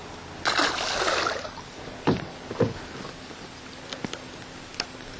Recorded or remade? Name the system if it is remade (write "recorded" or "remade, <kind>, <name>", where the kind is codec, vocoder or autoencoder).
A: recorded